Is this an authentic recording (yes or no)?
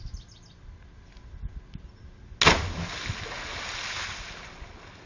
yes